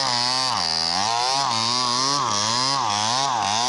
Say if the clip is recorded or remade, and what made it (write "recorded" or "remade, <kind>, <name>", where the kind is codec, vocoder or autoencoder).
recorded